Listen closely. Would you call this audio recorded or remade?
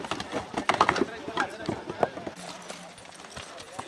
recorded